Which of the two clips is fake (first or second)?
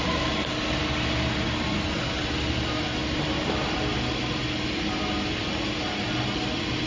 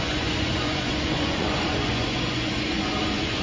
second